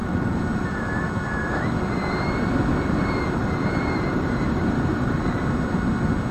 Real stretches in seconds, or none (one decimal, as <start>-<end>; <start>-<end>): 0.9-3.4; 5.4-6.3